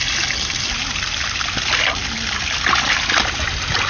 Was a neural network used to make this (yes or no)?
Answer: no